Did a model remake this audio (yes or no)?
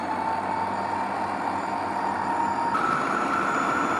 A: no